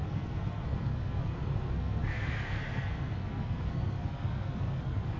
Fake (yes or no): yes